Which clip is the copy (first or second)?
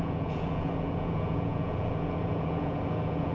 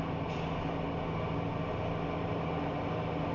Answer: first